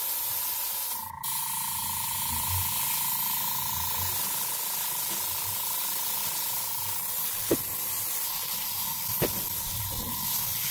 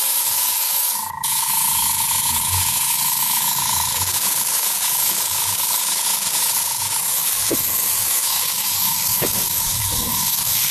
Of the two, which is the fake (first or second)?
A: second